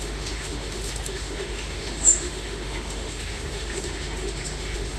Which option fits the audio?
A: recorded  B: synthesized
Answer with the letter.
B